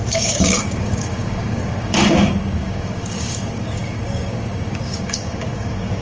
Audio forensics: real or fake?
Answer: fake